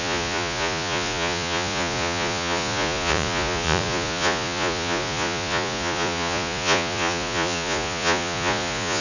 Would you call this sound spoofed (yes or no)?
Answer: yes